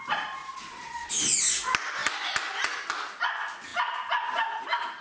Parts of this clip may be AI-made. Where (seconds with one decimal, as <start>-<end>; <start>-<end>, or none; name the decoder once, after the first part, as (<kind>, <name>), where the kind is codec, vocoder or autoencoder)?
0.4-1.1 (vocoder, Vocos)